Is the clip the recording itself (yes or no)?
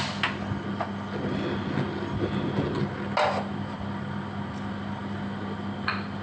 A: yes